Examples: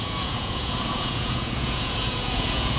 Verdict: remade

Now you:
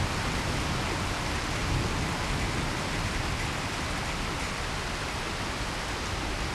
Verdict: recorded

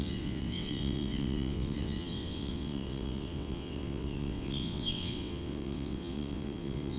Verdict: remade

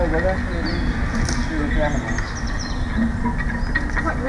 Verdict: recorded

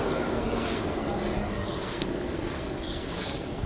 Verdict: remade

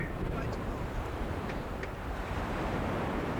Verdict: remade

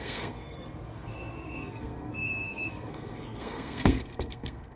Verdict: remade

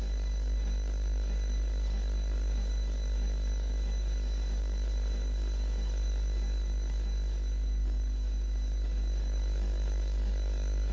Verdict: remade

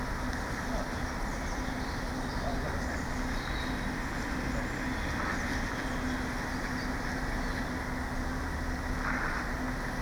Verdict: recorded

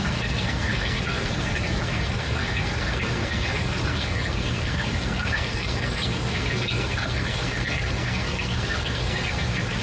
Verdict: remade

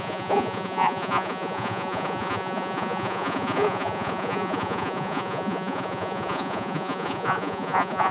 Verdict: remade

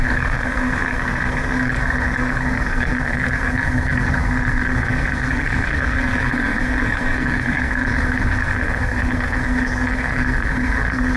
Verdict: remade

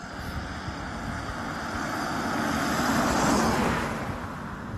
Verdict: recorded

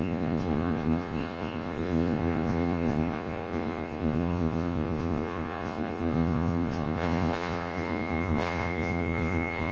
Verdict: remade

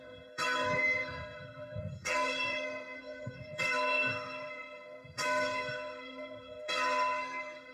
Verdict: remade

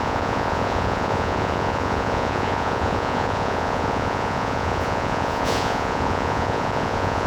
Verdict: remade